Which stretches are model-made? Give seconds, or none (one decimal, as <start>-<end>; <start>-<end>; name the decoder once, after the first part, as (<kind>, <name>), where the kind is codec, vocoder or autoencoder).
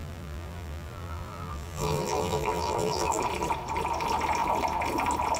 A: 0.0-3.2 (vocoder, BigVGAN v2)